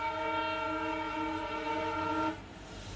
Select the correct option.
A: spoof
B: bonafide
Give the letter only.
B